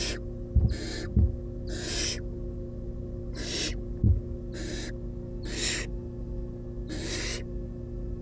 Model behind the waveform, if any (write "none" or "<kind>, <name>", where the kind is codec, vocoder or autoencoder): none